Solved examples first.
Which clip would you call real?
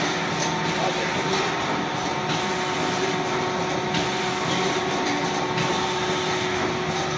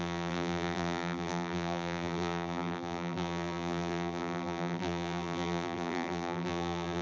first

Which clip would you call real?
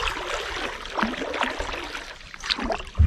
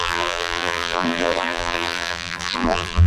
first